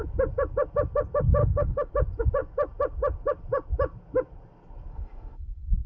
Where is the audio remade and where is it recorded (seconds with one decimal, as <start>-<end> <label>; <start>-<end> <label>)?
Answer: 0.0-1.4 recorded; 1.4-1.9 remade; 1.9-4.9 recorded; 4.9-5.9 remade